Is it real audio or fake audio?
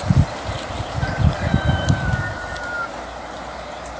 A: fake